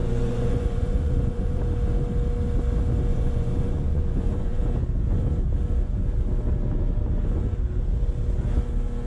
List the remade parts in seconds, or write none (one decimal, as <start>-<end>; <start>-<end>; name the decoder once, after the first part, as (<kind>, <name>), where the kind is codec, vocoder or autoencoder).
0.0-1.6 (vocoder, Vocos); 3.1-4.6